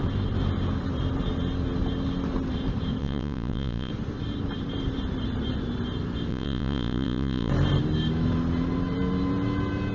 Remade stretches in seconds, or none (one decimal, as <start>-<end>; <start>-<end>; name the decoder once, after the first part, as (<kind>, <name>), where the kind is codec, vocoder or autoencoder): 3.0-3.9 (vocoder, Vocos); 6.3-7.5